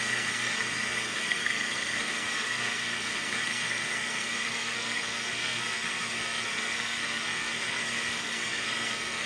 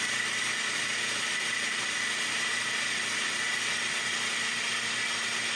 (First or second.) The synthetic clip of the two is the first